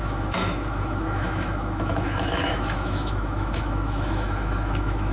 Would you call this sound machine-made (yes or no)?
yes